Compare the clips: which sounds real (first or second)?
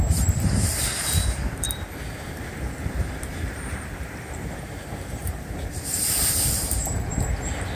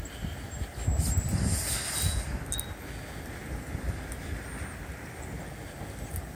second